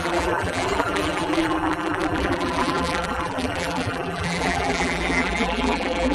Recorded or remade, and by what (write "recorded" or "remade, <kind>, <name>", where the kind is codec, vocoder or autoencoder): remade, vocoder, BigVGAN v2